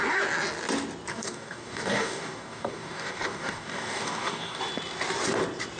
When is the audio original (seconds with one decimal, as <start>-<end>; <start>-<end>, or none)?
0.0-1.1; 4.6-5.8